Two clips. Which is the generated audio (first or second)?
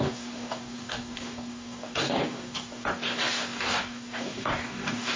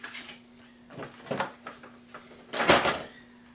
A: first